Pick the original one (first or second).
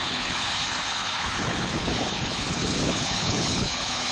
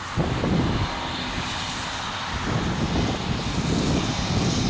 second